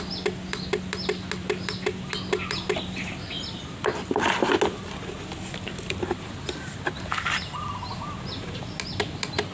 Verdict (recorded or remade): recorded